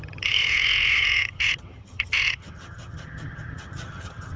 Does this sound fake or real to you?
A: fake